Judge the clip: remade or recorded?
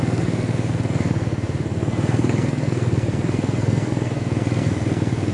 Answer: remade